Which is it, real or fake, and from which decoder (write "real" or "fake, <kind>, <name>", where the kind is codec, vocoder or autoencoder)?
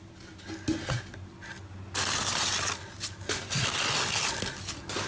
real